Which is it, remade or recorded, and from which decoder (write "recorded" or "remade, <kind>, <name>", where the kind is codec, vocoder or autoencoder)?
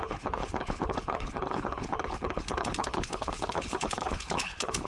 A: remade, codec, HILCodec